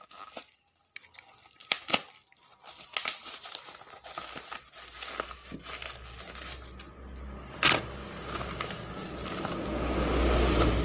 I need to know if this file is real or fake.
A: real